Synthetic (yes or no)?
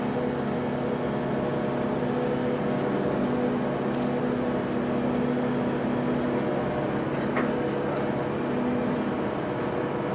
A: no